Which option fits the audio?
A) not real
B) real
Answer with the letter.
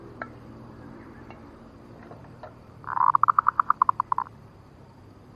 A